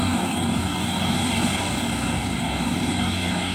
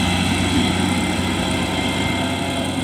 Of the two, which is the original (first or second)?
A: second